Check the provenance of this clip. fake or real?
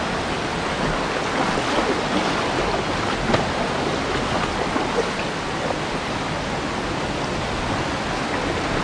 real